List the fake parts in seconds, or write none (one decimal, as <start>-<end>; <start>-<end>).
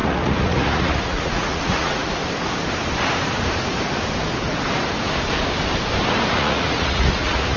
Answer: 0.0-2.0; 6.3-7.6